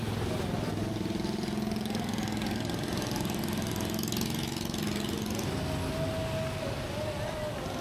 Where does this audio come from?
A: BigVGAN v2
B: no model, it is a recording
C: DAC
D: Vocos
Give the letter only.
B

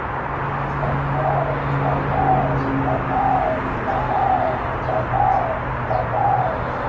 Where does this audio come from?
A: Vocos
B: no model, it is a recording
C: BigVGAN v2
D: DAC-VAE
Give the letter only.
B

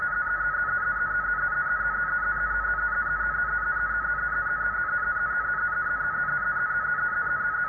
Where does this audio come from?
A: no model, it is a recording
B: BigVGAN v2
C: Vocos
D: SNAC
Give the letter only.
A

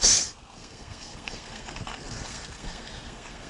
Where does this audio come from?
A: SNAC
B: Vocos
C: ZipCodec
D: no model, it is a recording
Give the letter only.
A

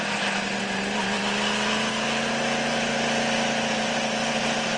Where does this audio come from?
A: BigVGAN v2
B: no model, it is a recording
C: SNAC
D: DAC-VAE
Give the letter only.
B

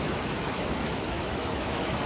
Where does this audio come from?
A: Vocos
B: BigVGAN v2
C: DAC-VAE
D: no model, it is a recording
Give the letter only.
C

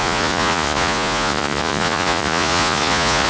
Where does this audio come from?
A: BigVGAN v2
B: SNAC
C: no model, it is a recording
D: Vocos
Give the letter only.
D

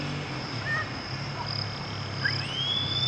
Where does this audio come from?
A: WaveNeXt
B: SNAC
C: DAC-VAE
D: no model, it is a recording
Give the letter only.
D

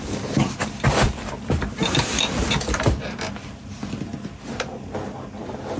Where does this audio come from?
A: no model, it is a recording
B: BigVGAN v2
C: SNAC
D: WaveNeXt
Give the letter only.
A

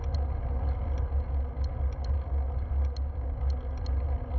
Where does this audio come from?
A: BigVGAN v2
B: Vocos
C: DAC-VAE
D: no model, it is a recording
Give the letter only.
D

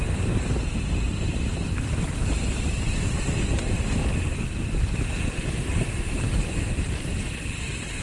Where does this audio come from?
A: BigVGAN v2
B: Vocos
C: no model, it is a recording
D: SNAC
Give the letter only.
A